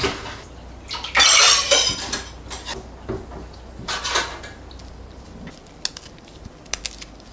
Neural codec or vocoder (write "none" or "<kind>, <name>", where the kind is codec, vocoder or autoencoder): none